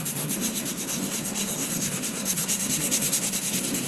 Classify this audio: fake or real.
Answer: fake